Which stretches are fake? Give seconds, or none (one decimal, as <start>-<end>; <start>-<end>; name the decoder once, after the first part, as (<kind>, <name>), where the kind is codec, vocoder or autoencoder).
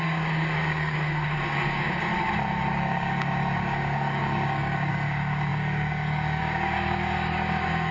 0.0-2.1 (codec, DAC); 2.7-7.9